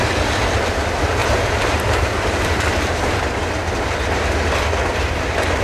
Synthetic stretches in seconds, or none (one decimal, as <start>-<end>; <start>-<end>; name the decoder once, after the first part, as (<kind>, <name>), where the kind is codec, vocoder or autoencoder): 1.2-3.2 (vocoder, BigVGAN v2)

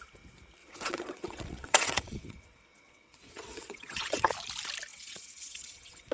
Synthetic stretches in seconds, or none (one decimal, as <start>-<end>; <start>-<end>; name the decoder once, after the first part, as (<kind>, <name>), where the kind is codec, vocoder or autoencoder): 0.6-4.3 (vocoder, WaveNeXt); 4.9-6.1

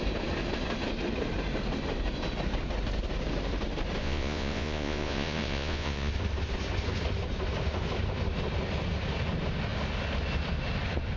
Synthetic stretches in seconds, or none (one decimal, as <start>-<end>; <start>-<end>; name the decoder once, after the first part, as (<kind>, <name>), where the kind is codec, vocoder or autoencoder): 4.0-6.1 (vocoder, Vocos)